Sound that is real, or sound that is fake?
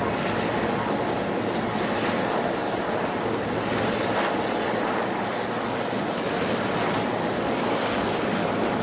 real